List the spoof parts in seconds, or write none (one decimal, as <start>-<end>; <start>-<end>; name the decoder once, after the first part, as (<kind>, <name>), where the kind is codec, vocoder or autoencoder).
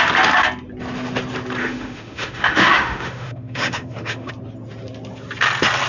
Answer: 1.6-4.3 (autoencoder, DAC-VAE)